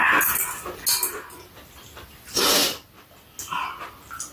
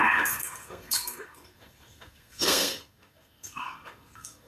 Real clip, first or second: first